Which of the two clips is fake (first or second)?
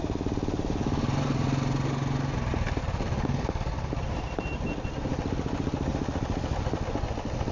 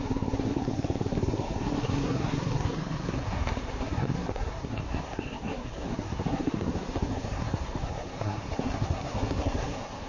second